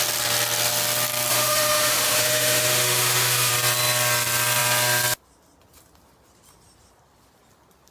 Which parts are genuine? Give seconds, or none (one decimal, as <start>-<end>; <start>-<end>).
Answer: 0.0-1.3; 3.5-7.9

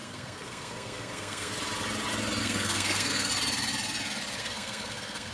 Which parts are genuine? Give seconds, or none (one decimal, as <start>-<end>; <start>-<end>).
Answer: 1.5-2.4; 3.3-4.4